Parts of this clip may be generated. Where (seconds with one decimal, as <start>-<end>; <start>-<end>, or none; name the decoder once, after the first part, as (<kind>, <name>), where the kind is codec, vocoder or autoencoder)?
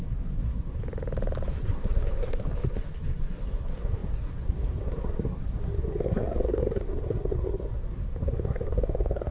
0.0-0.8 (codec, SNAC); 1.5-9.3